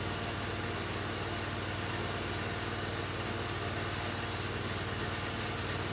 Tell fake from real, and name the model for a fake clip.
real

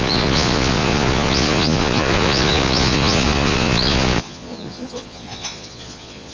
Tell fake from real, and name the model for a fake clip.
fake, vocoder, Vocos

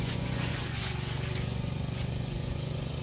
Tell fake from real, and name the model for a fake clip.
fake, vocoder, Vocos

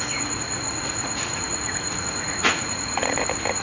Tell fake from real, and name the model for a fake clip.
fake, vocoder, Vocos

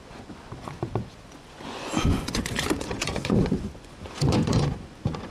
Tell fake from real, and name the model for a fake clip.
fake, vocoder, Vocos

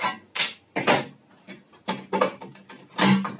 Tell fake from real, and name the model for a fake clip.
real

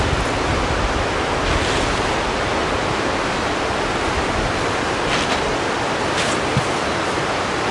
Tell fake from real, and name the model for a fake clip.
real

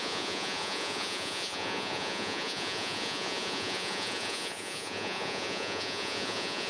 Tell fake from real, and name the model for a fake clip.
fake, vocoder, Vocos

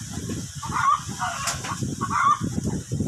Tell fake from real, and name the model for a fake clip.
real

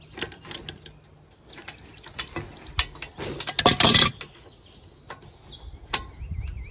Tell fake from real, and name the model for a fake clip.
real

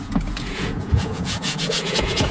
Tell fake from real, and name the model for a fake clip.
fake, vocoder, Vocos